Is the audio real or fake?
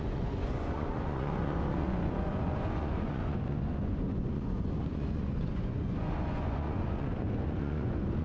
fake